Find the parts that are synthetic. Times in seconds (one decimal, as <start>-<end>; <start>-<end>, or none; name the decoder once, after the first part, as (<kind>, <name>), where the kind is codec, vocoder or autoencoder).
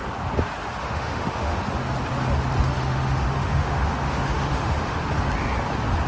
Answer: 0.8-1.6 (autoencoder, DAC-VAE); 2.7-5.0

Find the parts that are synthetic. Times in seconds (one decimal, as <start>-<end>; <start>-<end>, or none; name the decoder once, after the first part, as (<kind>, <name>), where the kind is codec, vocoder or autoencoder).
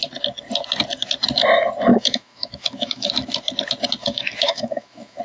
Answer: 1.9-3.1 (autoencoder, DAC-VAE); 4.0-5.2